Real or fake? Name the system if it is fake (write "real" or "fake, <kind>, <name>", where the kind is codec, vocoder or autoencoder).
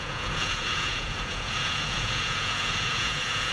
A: fake, vocoder, Vocos